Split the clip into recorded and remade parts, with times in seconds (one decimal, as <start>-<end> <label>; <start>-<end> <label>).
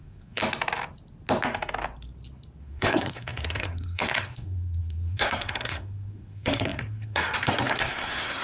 0.0-0.4 remade; 0.4-2.6 recorded; 2.6-8.4 remade